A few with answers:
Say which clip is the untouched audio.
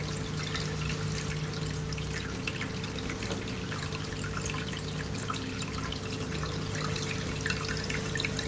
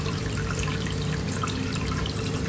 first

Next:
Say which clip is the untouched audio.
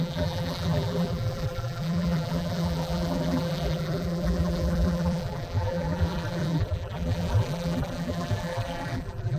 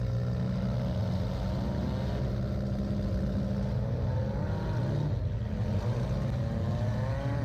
second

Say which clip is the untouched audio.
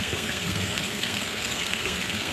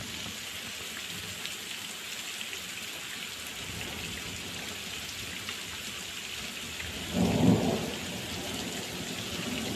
second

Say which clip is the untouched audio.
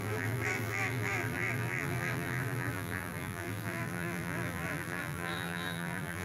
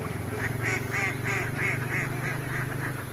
second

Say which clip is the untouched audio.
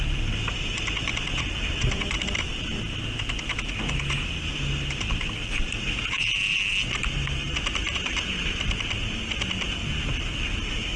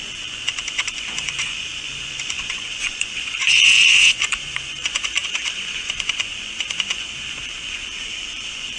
first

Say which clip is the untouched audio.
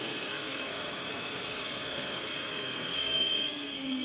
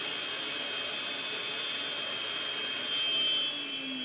second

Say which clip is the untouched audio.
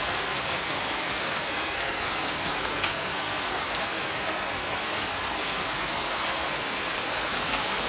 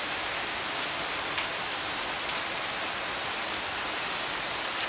second